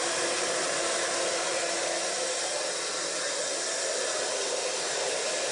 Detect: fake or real real